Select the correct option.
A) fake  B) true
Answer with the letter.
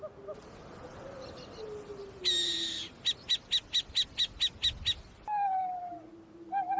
B